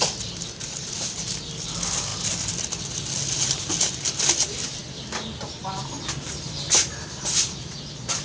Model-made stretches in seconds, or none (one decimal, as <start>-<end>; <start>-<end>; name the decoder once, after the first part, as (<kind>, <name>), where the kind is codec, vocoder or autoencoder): none